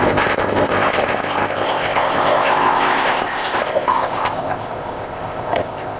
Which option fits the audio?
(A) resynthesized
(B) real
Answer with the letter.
A